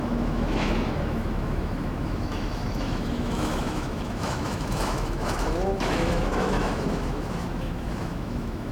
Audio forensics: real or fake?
fake